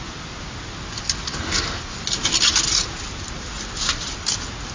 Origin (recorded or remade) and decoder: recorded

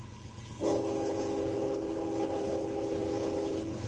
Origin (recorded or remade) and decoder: remade, codec, HILCodec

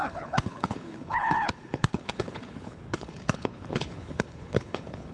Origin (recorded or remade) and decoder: remade, codec, HILCodec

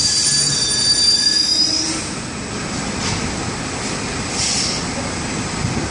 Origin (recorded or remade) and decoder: recorded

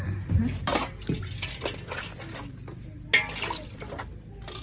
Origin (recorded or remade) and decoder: recorded